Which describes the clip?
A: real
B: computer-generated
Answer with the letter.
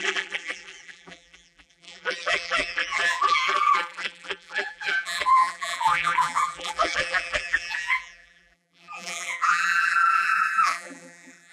B